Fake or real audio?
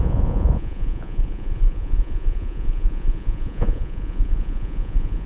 fake